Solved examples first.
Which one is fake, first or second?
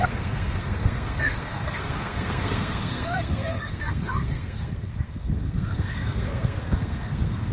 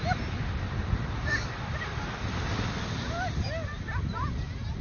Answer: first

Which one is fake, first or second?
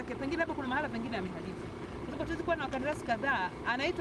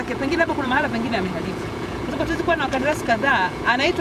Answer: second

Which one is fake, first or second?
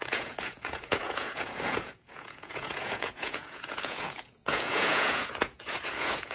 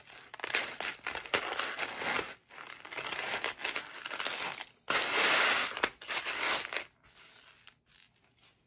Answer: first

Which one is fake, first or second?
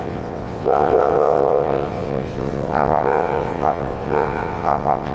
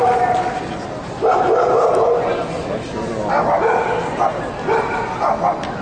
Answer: first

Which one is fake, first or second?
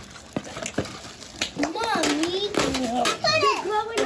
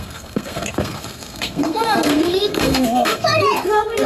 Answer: second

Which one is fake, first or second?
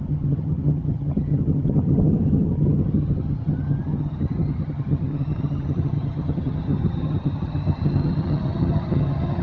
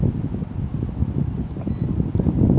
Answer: first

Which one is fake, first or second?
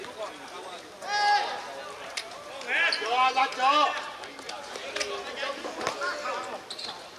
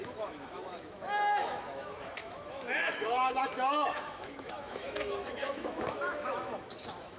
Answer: second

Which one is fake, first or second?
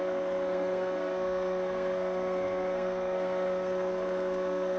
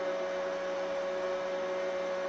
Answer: first